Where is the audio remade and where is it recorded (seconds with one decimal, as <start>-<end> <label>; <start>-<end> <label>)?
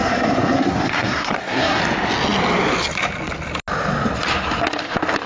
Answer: 0.0-1.8 remade; 1.8-5.3 recorded